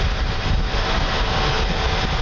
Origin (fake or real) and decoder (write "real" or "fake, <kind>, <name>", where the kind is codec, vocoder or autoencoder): real